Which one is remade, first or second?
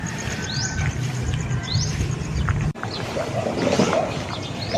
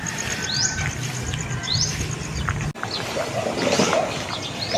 first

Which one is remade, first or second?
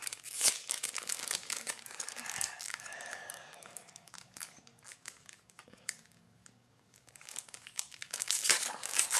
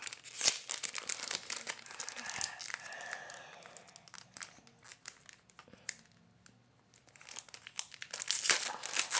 first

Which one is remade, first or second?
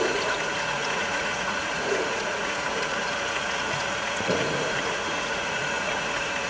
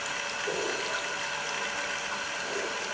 first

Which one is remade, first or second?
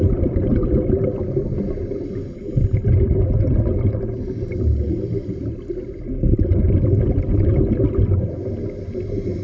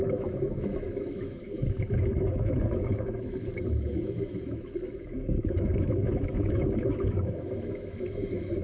second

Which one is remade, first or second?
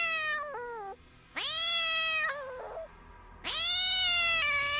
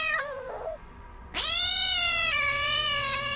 second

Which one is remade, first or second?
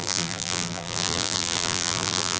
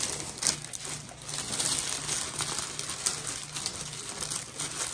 first